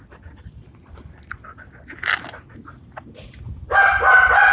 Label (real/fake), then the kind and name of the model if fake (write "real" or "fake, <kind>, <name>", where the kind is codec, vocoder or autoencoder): real